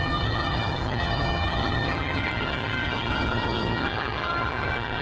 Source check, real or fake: fake